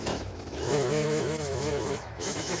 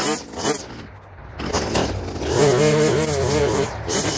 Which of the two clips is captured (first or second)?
second